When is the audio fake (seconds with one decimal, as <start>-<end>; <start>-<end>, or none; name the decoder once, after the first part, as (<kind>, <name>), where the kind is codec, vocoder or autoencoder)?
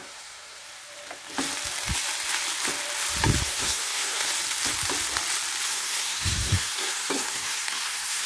0.0-0.6 (codec, SNAC); 3.4-4.3; 5.7-8.3